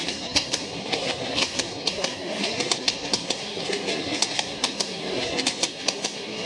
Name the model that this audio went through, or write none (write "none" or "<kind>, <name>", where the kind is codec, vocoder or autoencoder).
codec, SNAC